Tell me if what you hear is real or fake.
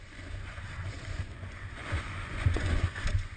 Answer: fake